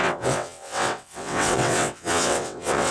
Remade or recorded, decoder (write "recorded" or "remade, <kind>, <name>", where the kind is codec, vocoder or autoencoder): remade, vocoder, WaveNeXt